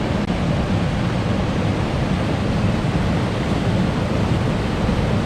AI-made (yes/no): no